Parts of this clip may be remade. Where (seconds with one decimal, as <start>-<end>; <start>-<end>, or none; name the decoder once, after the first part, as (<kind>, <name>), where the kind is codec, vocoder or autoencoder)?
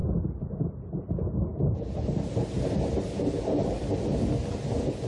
none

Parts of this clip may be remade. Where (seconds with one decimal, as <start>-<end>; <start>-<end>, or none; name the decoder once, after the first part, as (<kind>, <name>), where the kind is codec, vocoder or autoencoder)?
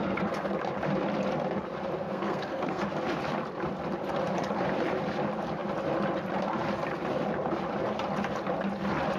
0.0-0.5 (codec, SNAC); 2.0-2.8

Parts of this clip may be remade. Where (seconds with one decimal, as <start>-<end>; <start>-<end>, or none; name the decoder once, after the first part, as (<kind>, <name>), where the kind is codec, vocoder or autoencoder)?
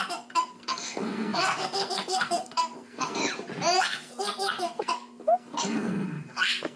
0.0-3.2 (codec, SNAC); 3.8-6.8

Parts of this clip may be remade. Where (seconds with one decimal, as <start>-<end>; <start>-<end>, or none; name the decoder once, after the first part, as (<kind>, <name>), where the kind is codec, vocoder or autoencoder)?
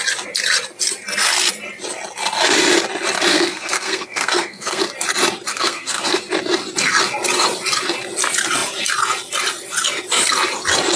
3.3-4.8 (codec, SNAC); 5.5-6.2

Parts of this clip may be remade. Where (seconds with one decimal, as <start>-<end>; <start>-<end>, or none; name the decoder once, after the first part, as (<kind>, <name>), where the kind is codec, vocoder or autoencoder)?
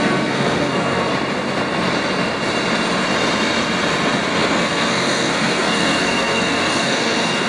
0.0-1.1 (codec, SNAC); 4.3-7.5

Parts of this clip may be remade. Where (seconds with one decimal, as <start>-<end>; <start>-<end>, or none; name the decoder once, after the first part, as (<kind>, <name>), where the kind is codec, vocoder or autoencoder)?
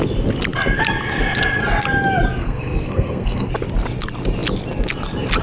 2.4-3.5 (codec, SNAC)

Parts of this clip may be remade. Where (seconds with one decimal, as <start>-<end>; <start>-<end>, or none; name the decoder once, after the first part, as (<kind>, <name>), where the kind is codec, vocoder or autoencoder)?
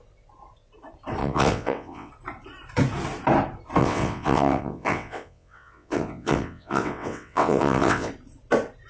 1.2-2.1 (vocoder, WaveNeXt); 3.8-8.1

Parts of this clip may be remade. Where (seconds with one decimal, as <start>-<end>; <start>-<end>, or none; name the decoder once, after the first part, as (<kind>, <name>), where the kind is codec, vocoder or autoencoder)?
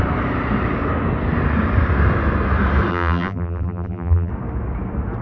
2.9-4.3 (vocoder, BigVGAN v2)